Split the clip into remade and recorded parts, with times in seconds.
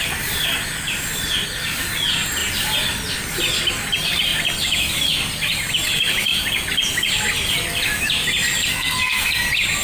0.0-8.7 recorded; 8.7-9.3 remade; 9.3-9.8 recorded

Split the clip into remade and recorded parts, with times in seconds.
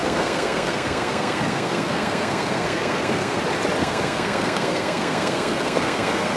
0.0-3.4 remade; 3.4-3.8 recorded; 3.8-6.4 remade